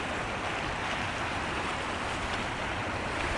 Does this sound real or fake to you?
real